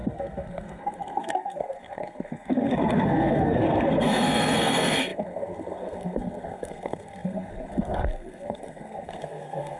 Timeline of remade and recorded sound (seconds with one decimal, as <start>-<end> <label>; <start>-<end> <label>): 0.0-9.8 remade